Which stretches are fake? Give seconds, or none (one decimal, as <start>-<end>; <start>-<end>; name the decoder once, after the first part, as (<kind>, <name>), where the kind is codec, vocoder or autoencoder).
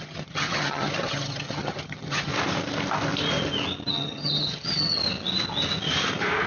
0.0-2.3 (vocoder, HiFi-GAN); 3.9-5.0